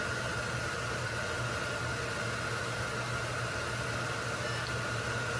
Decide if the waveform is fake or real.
real